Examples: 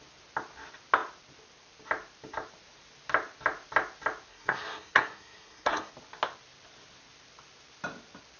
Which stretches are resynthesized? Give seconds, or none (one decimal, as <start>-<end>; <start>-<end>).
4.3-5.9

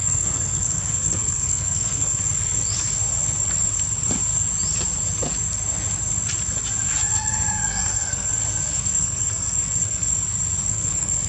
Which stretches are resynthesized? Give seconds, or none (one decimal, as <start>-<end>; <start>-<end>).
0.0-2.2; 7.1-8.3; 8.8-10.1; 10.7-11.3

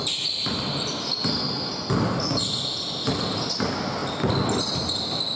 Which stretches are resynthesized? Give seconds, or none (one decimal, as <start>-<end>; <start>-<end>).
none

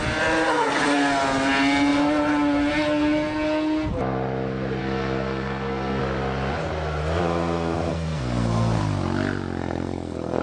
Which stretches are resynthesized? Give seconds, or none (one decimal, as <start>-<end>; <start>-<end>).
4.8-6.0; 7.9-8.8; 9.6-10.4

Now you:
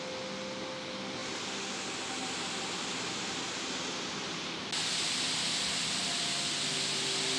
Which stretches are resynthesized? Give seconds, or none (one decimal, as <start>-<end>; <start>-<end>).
none

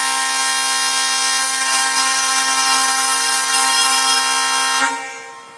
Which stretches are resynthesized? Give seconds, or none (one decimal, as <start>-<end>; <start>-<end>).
1.4-4.2

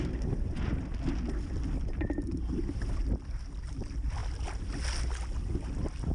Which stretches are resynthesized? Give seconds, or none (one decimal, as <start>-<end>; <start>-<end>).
none